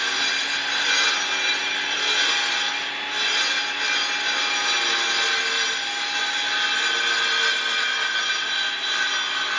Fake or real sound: real